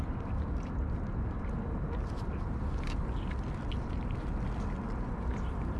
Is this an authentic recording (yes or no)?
yes